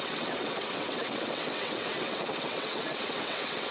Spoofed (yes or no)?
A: yes